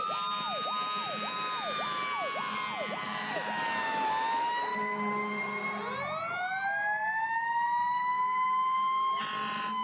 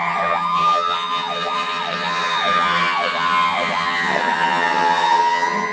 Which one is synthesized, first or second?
second